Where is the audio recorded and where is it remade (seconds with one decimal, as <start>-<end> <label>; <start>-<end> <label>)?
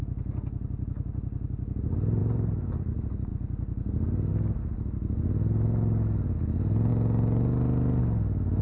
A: 0.0-2.2 recorded; 2.2-2.9 remade; 2.9-8.6 recorded